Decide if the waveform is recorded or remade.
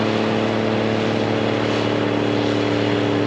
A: recorded